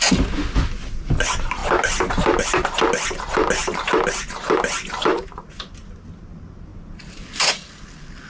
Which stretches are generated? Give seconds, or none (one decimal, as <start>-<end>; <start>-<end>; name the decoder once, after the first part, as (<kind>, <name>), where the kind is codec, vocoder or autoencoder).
none